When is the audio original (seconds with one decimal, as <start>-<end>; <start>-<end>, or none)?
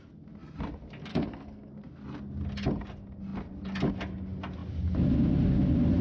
0.0-1.1; 1.7-6.0